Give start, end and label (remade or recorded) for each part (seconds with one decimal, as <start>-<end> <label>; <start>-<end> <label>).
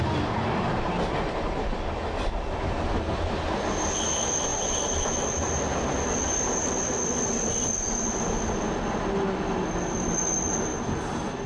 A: 0.0-11.5 recorded